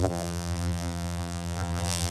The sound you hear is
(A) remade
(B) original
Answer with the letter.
A